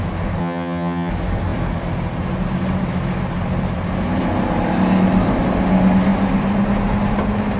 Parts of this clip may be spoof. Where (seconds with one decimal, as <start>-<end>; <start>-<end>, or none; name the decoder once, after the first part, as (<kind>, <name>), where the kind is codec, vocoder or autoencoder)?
0.4-1.1 (vocoder, HiFi-GAN)